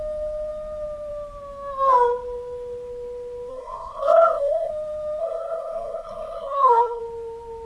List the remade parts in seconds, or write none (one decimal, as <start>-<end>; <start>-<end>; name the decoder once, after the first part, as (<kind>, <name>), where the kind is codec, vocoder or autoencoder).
3.5-4.7 (codec, SNAC); 5.2-7.0